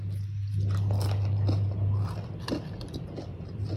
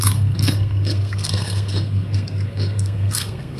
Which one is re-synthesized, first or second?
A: second